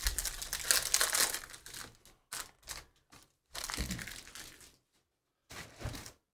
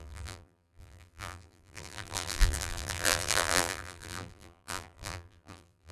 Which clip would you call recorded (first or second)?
first